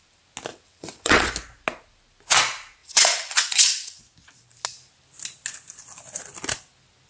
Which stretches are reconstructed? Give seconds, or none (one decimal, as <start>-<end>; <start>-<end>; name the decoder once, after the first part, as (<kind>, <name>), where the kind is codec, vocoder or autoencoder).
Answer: 0.5-1.3 (vocoder, WaveNeXt); 2.8-4.0